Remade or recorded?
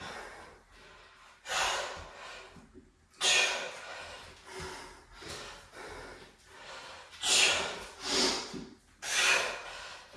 recorded